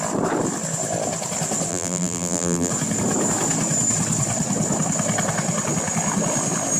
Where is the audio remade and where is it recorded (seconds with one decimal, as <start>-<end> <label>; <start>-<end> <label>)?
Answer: 0.0-1.7 recorded; 1.7-2.7 remade; 2.7-6.8 recorded